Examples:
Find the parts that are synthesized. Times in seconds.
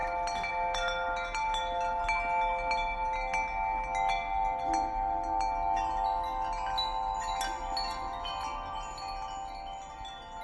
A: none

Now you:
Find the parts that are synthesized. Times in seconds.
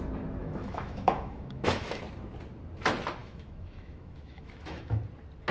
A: 0.4-2.0 (autoencoder, DAC-VAE); 3.2-5.0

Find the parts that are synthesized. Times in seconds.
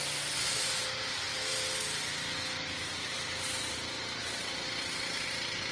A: none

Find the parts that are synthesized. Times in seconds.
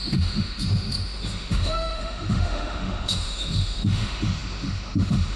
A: 0.0-5.4 (autoencoder, DAC-VAE)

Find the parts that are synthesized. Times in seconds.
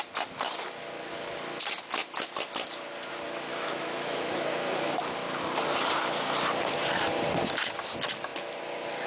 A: 3.5-5.0 (autoencoder, DAC-VAE)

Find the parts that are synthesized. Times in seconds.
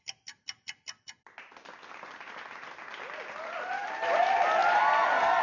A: none